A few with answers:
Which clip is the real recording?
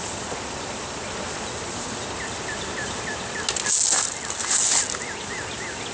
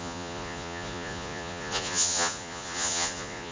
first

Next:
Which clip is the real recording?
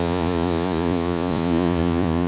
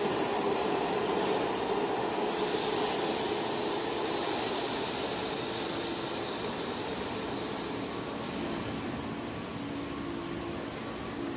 second